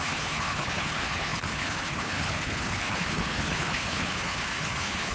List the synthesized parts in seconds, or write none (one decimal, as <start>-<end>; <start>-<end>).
0.0-5.1